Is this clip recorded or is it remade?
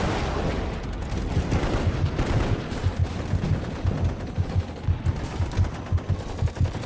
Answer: recorded